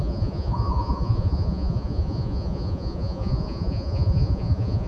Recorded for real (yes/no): no